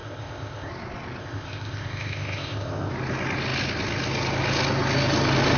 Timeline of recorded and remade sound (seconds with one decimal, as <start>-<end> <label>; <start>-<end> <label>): 0.0-0.7 remade; 0.7-1.2 recorded; 1.2-2.9 remade; 2.9-5.6 recorded